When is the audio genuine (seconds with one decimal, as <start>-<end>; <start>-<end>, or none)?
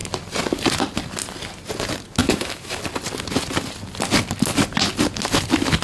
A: 0.0-2.2; 2.8-5.8